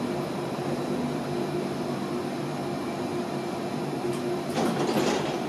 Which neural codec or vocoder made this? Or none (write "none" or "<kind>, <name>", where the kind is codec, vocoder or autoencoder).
none